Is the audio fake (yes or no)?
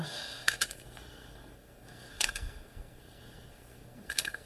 yes